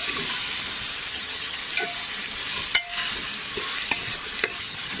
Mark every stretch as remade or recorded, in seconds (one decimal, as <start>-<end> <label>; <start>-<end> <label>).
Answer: 0.0-1.1 recorded; 1.1-1.6 remade; 1.6-4.6 recorded; 4.6-5.0 remade